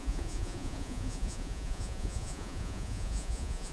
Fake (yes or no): yes